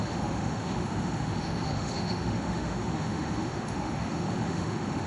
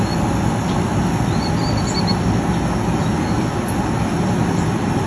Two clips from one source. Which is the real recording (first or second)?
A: second